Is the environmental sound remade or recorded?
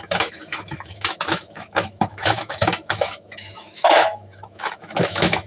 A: remade